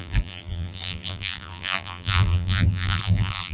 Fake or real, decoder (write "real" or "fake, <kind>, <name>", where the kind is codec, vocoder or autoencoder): fake, vocoder, BigVGAN v2